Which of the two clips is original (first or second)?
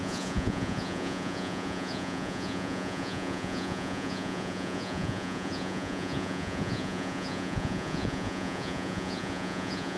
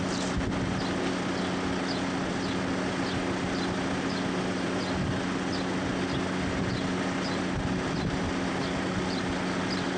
second